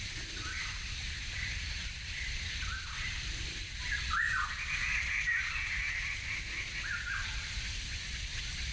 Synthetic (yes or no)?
no